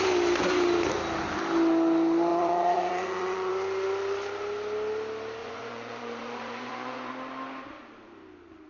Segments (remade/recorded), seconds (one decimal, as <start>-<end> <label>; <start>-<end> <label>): 0.0-2.3 recorded; 2.3-3.5 remade; 3.5-5.4 recorded; 5.4-7.1 remade; 7.1-8.7 recorded